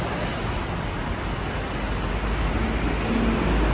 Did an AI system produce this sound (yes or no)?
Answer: no